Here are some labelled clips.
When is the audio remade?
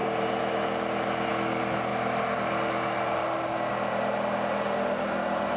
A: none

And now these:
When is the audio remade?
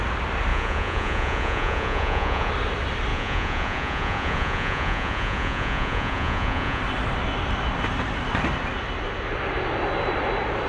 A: 0.5-2.5 (vocoder, Vocos); 3.1-6.8